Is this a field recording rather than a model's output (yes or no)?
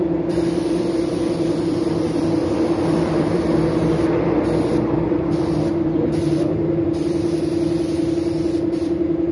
no